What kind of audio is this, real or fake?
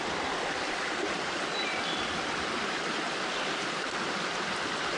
real